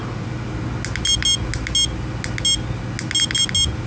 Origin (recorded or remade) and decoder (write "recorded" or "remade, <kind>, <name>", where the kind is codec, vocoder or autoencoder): recorded